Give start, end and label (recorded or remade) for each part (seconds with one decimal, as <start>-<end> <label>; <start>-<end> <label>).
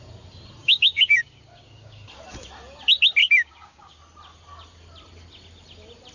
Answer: 0.0-0.6 recorded; 0.6-2.1 remade; 2.1-3.2 recorded; 3.2-4.0 remade; 4.0-6.1 recorded